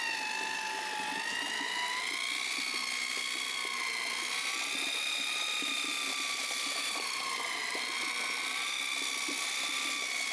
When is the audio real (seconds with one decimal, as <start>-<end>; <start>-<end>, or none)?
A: 0.0-6.1; 7.8-10.3